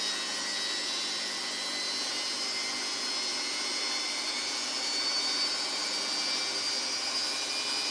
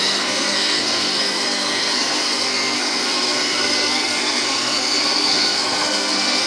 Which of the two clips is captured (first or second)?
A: first